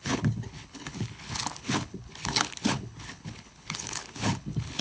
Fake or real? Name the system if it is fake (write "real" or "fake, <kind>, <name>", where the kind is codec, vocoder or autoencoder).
fake, codec, HILCodec